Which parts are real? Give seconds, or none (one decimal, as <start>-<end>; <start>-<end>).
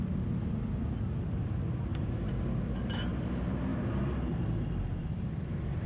0.0-1.9; 3.3-5.9